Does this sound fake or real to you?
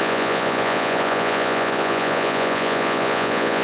fake